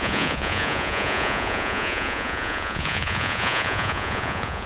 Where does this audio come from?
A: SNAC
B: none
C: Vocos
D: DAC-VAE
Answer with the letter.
C